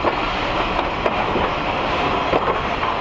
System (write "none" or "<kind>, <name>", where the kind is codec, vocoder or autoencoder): none